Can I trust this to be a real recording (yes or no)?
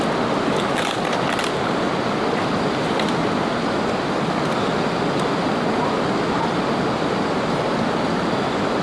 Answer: yes